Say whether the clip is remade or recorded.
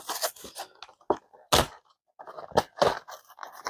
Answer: recorded